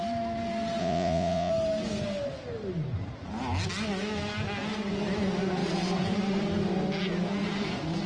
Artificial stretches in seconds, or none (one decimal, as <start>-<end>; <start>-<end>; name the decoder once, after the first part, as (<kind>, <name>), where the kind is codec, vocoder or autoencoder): 0.8-1.5 (vocoder, Vocos)